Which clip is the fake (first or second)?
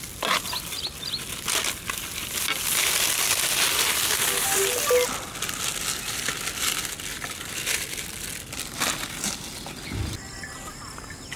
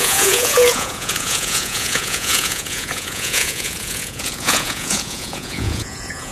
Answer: second